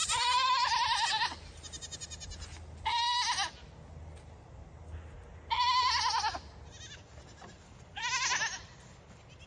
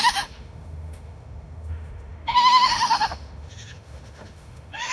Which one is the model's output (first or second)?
second